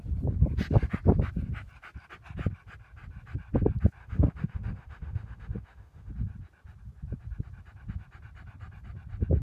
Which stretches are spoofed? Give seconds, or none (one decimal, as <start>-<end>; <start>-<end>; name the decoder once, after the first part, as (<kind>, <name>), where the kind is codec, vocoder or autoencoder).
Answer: 4.0-6.1 (autoencoder, DAC-VAE)